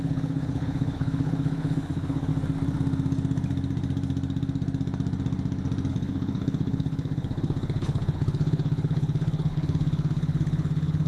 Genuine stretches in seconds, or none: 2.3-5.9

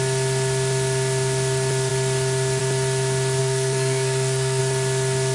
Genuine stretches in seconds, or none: 0.0-3.4; 4.6-5.3